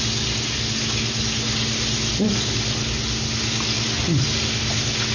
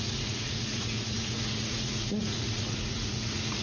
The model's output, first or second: second